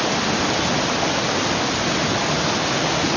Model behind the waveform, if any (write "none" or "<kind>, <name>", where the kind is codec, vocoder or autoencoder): none